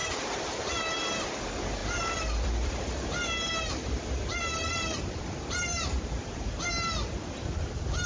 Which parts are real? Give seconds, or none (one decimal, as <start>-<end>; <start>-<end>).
1.1-1.8; 6.7-8.1